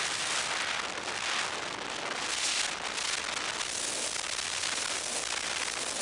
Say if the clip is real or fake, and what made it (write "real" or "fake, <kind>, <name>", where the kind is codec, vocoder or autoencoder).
real